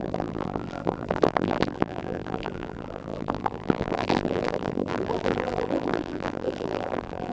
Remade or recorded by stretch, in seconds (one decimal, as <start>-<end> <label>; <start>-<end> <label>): 0.0-7.3 remade